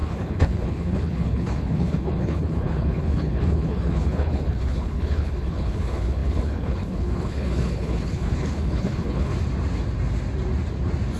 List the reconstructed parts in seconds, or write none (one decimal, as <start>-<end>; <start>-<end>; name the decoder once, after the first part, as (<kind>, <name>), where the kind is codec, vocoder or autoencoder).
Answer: 0.0-9.3 (codec, HILCodec)